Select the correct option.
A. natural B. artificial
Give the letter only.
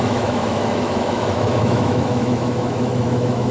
B